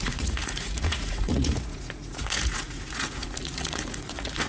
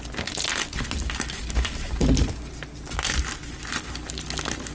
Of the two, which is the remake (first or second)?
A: first